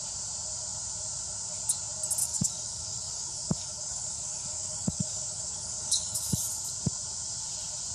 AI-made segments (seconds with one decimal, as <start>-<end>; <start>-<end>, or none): 2.2-6.3